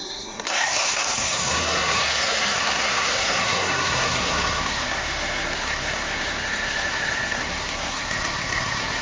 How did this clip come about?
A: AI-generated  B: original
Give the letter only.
A